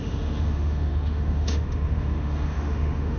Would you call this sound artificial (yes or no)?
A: yes